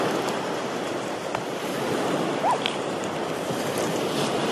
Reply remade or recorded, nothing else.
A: recorded